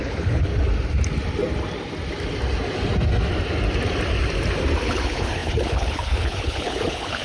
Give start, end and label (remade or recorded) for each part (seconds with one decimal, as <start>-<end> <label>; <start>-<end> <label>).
0.0-0.5 remade; 0.5-4.8 recorded; 4.8-7.2 remade